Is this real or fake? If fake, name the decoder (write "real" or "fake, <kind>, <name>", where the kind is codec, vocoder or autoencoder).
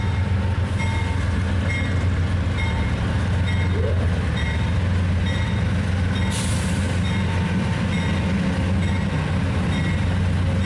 real